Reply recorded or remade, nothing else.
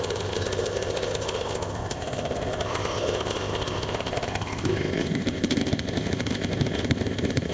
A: remade